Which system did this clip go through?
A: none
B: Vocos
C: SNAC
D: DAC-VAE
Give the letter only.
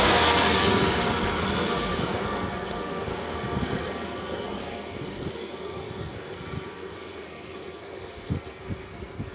C